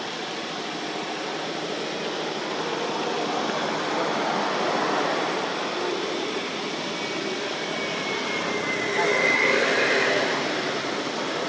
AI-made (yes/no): no